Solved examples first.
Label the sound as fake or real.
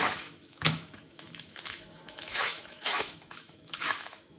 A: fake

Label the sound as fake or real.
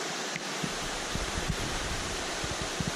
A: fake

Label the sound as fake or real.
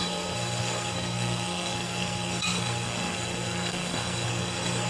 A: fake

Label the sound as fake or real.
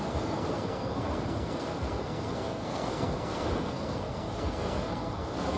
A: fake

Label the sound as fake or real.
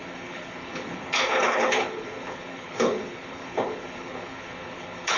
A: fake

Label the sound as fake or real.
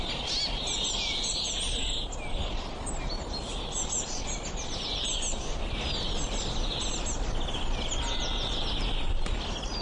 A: real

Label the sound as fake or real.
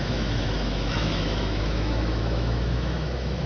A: fake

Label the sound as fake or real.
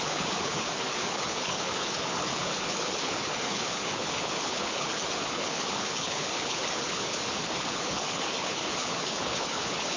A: fake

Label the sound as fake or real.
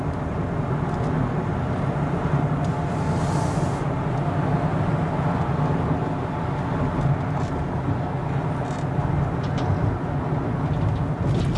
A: real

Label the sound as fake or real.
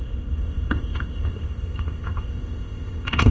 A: fake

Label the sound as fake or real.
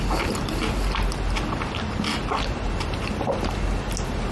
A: real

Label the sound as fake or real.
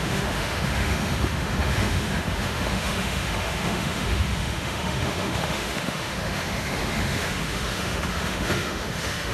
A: fake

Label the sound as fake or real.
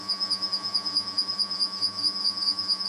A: fake